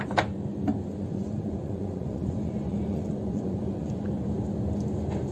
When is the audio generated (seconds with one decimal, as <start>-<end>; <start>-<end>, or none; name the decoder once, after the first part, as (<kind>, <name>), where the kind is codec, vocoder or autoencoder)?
0.9-4.1 (vocoder, Vocos)